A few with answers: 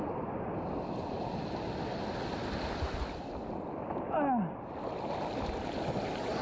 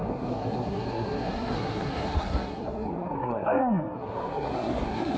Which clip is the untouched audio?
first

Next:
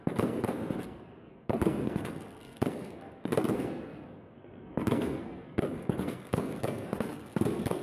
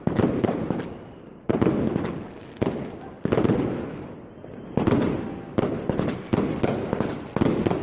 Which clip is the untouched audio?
second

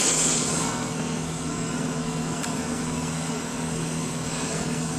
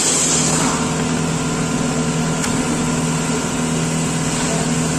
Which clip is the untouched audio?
second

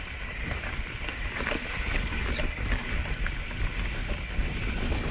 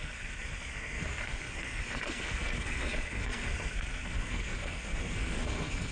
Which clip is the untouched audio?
first